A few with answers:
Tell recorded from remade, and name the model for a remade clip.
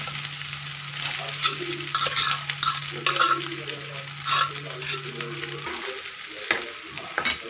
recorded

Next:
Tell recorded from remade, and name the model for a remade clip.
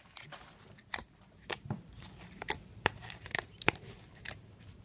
remade, vocoder, BigVGAN v2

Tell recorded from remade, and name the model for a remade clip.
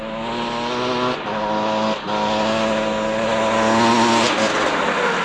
recorded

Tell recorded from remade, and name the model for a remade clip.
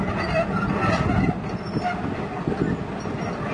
recorded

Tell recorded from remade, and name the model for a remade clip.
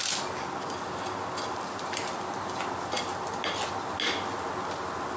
recorded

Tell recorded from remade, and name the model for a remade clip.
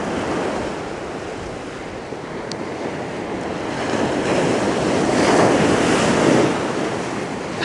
recorded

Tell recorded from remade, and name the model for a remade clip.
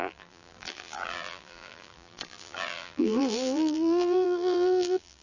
remade, vocoder, BigVGAN v2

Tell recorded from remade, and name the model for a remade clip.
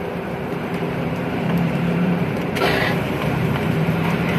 remade, vocoder, BigVGAN v2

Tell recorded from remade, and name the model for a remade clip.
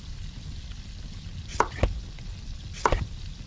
recorded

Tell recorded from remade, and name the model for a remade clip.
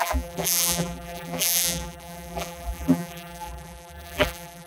remade, vocoder, BigVGAN v2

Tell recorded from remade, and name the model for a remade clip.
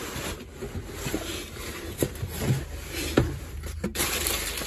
remade, vocoder, BigVGAN v2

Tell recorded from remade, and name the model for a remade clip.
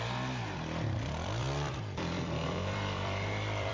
remade, vocoder, BigVGAN v2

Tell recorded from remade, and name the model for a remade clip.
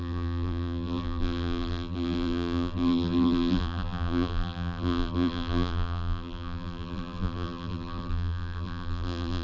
remade, vocoder, BigVGAN v2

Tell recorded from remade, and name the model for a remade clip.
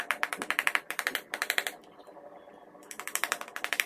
remade, vocoder, BigVGAN v2